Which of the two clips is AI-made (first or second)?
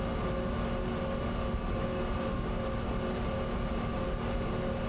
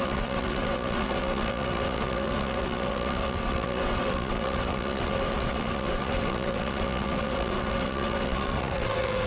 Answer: second